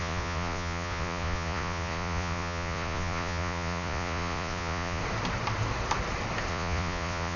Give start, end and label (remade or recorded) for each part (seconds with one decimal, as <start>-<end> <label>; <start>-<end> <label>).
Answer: 0.0-5.0 remade; 5.0-6.5 recorded; 6.5-7.4 remade